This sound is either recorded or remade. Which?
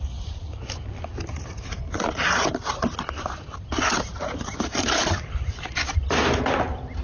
recorded